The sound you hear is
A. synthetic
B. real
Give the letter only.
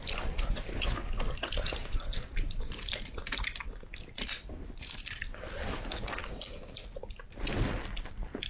B